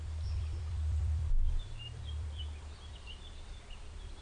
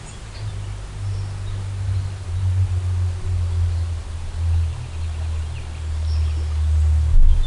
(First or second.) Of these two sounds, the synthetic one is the first